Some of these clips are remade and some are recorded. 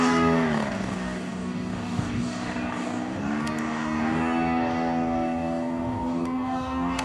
remade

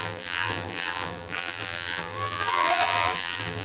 remade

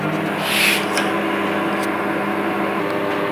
recorded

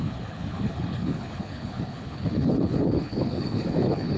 remade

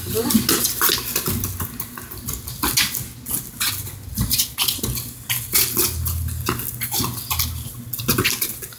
recorded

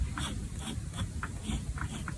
remade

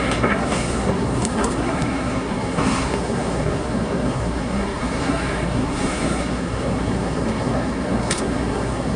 remade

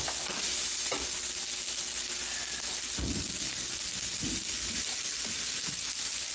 recorded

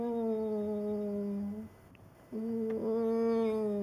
recorded